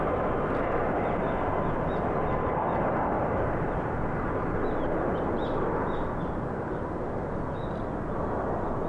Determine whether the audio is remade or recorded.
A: recorded